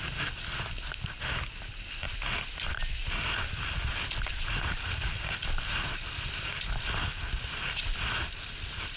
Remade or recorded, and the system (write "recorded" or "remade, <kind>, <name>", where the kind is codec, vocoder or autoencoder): recorded